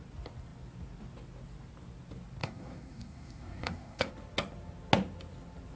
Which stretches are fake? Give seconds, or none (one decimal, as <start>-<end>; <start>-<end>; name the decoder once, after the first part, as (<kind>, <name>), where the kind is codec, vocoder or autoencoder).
2.4-4.1 (codec, SNAC)